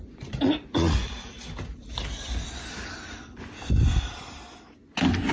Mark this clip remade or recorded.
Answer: recorded